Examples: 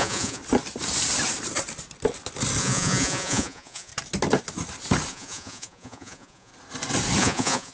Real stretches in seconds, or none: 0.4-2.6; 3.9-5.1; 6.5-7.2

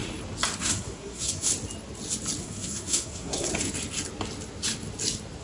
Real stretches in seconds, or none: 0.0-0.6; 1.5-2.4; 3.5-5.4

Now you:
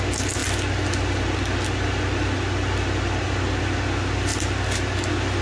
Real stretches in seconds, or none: 0.0-5.4

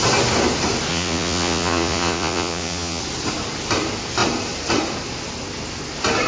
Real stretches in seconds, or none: 0.0-0.9; 3.0-6.3

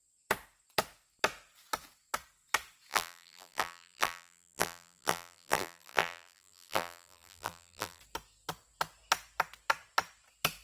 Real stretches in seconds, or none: 0.0-2.9; 8.0-10.6

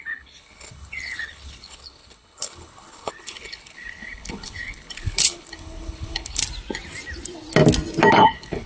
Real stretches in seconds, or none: 6.4-8.1

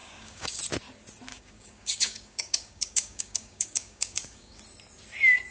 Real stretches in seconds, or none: 0.6-1.3; 4.6-5.5

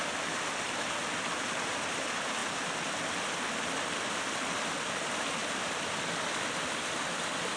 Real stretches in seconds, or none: 0.0-2.4; 3.3-5.4; 6.0-7.6